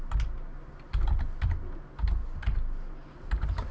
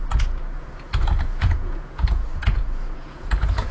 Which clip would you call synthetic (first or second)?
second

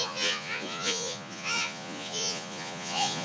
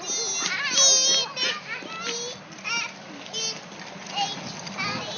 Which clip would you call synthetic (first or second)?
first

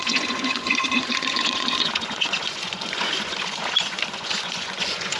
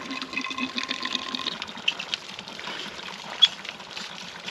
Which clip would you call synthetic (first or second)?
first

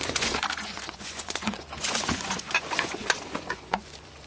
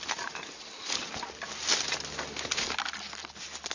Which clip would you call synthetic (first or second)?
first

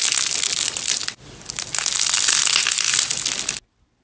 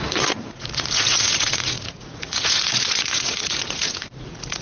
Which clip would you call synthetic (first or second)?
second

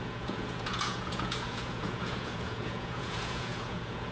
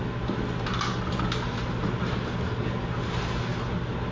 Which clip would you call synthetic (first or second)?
first